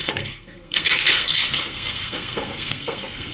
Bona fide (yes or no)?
no